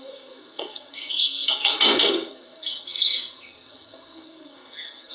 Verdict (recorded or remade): remade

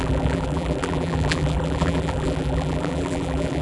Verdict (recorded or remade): remade